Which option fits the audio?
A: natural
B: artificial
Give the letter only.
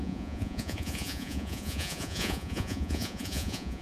B